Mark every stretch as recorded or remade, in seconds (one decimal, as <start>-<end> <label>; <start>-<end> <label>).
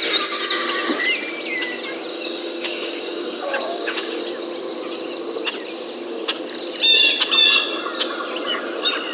0.0-2.1 recorded; 2.1-4.2 remade; 4.2-9.1 recorded